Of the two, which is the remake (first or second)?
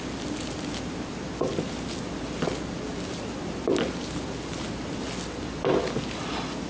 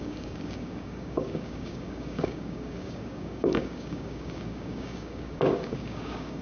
second